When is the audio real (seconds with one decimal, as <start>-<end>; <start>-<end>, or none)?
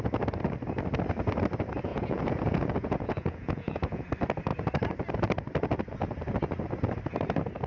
0.0-1.9; 4.1-7.7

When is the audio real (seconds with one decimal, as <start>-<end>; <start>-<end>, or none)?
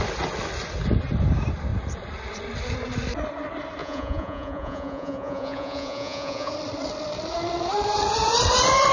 0.0-3.8; 6.5-8.9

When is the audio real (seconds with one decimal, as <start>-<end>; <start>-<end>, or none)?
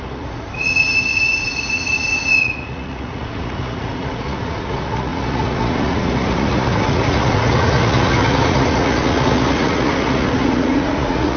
none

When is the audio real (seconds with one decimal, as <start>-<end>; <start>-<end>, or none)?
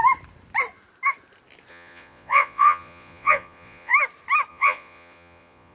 0.0-1.7; 3.9-4.5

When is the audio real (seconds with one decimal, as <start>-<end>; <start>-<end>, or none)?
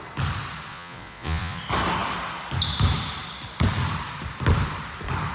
0.0-0.7; 1.6-5.3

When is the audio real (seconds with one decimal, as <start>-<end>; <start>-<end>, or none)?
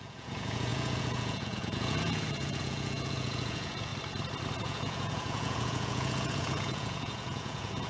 3.9-4.6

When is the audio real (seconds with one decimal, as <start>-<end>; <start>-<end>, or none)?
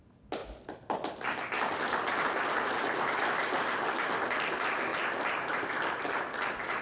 0.0-6.8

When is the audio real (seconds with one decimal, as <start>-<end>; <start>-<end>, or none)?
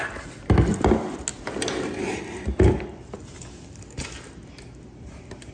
0.0-5.5